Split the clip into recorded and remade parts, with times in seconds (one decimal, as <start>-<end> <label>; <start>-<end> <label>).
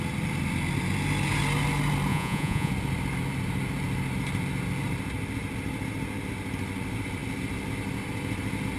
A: 0.0-2.1 recorded; 2.1-2.7 remade; 2.7-8.8 recorded